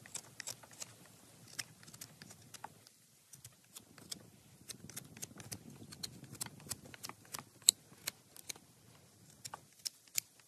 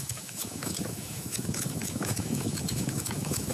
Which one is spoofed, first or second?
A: second